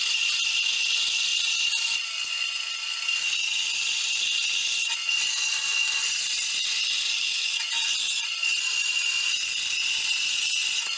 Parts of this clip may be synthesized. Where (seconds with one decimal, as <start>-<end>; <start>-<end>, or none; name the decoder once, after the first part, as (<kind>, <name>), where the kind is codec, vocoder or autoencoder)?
5.7-7.3 (vocoder, BigVGAN v2)